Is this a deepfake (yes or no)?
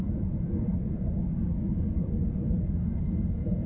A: no